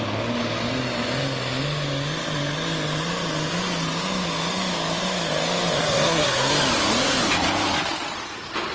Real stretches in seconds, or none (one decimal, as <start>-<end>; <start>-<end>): 0.0-5.8; 6.5-8.7